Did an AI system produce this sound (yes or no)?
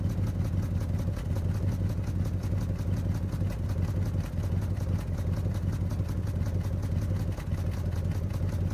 no